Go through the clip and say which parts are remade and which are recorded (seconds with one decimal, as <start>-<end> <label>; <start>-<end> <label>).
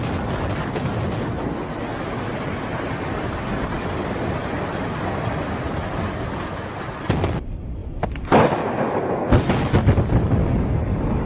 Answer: 0.0-11.3 recorded